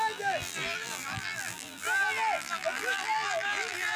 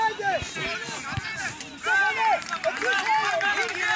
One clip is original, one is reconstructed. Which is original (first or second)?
second